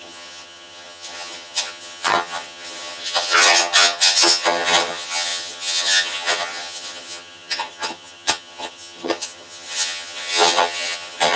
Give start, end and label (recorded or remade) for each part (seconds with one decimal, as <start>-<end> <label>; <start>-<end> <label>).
0.0-11.4 remade